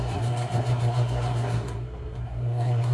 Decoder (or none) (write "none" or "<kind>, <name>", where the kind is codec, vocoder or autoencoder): codec, SNAC